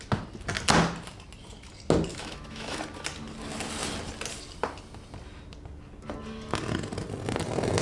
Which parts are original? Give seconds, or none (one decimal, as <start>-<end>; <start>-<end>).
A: 0.0-2.1; 2.8-7.8

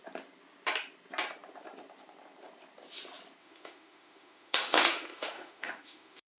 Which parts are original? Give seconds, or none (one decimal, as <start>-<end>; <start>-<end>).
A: 0.0-3.4

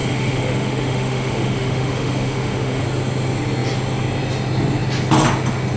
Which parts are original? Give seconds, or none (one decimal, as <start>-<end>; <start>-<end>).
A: 2.8-5.8

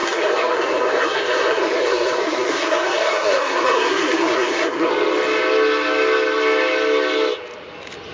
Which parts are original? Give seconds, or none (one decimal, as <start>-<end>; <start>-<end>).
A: 4.9-8.1

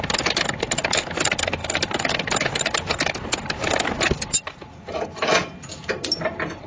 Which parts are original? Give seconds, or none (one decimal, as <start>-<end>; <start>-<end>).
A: 0.0-6.7

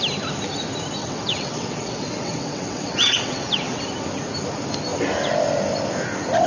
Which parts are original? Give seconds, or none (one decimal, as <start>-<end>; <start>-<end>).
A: 0.0-1.0; 3.8-6.5